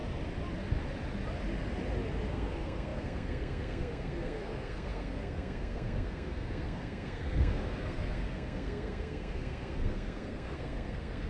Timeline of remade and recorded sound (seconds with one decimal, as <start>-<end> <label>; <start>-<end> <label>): 0.0-2.3 recorded; 2.3-11.3 remade